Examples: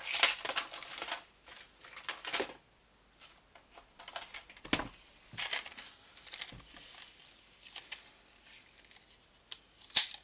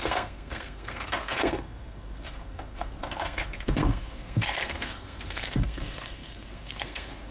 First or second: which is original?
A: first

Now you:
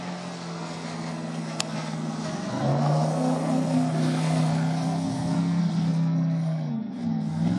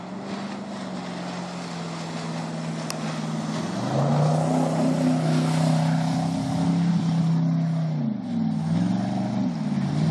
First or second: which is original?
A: second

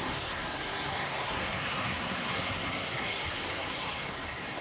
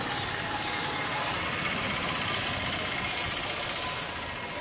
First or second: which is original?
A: second